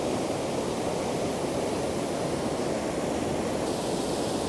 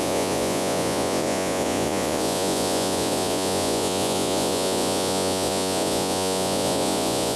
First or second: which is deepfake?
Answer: second